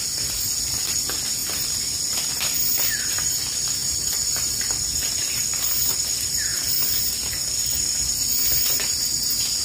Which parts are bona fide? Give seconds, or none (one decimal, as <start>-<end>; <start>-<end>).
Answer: 0.0-3.8; 5.9-6.5; 7.1-9.6